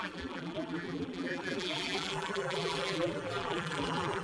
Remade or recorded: remade